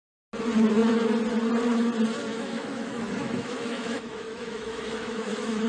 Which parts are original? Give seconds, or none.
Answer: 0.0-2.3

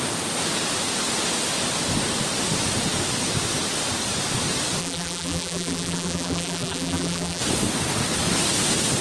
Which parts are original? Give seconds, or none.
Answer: 0.0-4.8; 7.4-9.0

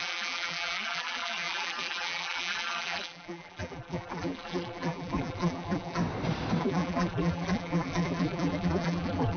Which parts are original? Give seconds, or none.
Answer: 6.0-6.6

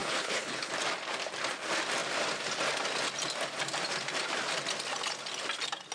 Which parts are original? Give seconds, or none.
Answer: 0.7-5.9

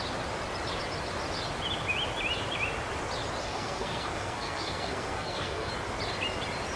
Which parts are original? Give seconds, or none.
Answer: 0.0-3.4; 5.7-6.8

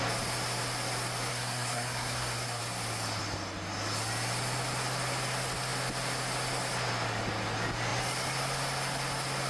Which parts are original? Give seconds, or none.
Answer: 0.0-1.3; 2.6-9.5

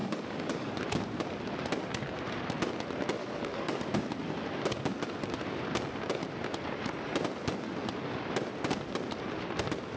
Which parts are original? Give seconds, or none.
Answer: 0.8-3.2; 3.8-10.0